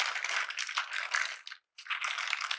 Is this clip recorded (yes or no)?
yes